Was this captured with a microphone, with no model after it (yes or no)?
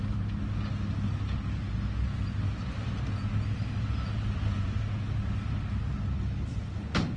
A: yes